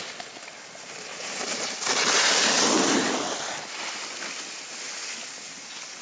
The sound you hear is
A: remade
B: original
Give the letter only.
B